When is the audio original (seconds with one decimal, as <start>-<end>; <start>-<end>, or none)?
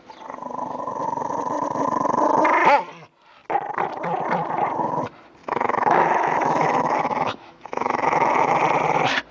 0.0-5.4; 8.5-9.3